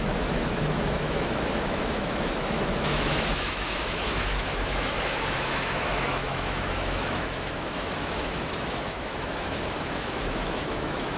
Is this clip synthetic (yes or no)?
yes